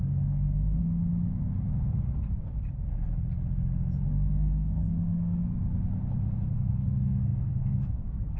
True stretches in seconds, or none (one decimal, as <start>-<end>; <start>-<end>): 0.8-4.1; 5.4-6.5